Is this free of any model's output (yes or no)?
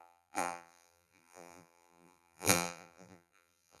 no